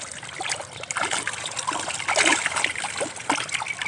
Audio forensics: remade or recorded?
recorded